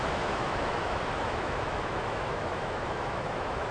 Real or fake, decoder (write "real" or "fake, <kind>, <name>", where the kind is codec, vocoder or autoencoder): fake, autoencoder, DAC-VAE